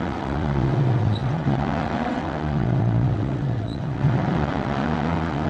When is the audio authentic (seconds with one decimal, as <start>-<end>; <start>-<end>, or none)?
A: none